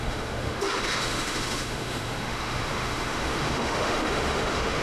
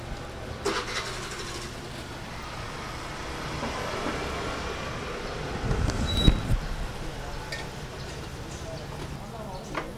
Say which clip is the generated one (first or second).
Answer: first